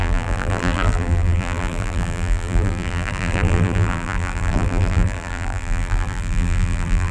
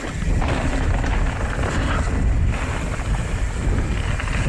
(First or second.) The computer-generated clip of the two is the first